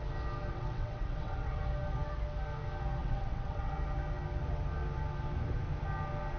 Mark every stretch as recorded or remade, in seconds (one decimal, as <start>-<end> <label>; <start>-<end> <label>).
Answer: 0.0-0.5 recorded; 0.5-1.6 remade; 1.6-3.0 recorded; 3.0-3.7 remade; 3.7-6.4 recorded